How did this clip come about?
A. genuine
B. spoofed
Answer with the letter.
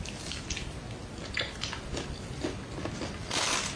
A